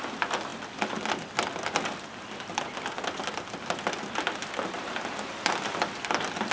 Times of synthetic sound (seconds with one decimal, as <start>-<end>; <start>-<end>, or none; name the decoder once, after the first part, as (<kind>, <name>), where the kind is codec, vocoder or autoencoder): none